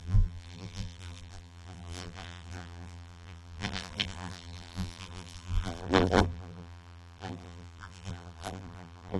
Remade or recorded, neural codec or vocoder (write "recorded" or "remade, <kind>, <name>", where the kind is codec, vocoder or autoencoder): remade, vocoder, BigVGAN v2